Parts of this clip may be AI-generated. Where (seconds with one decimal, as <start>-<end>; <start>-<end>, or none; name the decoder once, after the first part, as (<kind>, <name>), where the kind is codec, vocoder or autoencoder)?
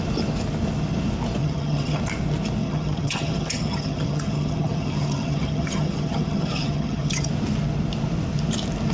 1.4-2.0 (vocoder, HiFi-GAN); 2.6-7.3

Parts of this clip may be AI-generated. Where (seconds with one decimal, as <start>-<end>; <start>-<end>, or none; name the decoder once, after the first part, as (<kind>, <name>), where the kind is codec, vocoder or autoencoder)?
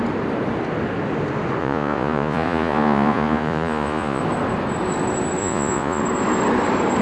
1.6-4.2 (vocoder, Vocos); 5.4-6.0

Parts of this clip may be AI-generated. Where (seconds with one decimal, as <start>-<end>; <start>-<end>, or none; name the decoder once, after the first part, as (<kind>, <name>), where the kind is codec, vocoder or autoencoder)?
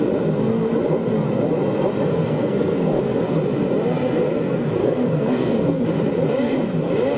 2.1-3.0 (codec, SNAC); 4.8-5.8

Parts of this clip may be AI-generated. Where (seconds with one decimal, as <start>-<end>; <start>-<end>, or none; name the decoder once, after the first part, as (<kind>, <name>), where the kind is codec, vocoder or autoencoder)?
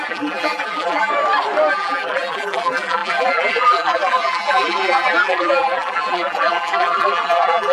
0.0-1.1 (vocoder, BigVGAN v2); 1.7-7.7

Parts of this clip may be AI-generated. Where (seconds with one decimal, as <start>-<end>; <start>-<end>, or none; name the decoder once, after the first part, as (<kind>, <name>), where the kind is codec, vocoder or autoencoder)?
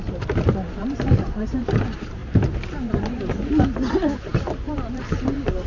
0.0-2.2 (vocoder, BigVGAN v2); 2.9-5.7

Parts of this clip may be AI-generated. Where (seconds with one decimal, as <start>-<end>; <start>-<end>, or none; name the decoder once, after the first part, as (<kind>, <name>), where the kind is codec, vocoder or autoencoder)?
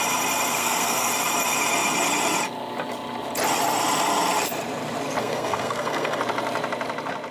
0.5-1.1 (codec, SNAC); 5.2-6.2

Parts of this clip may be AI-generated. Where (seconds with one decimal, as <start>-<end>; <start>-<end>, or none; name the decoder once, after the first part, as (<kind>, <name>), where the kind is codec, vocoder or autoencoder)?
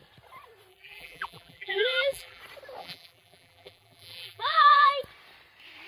0.7-2.4 (vocoder, BigVGAN v2); 2.8-4.9